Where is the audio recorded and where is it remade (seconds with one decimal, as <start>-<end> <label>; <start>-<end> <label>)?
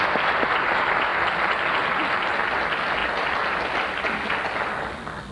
0.0-5.3 recorded